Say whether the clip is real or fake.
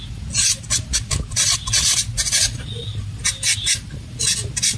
real